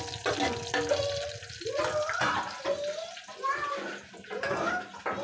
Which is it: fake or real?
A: real